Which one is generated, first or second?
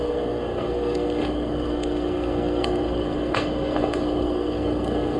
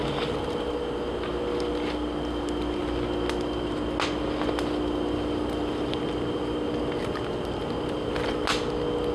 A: first